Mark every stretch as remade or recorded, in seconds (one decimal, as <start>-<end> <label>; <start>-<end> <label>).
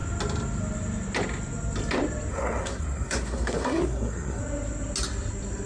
0.0-2.3 recorded; 2.3-4.4 remade; 4.4-5.7 recorded